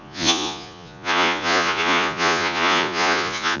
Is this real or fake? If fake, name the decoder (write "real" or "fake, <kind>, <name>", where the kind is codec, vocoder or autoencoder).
fake, vocoder, Vocos